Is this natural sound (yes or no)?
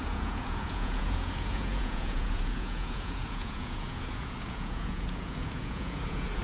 no